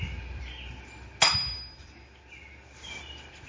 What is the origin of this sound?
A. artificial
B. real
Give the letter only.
B